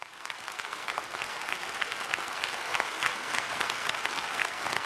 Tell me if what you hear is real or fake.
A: fake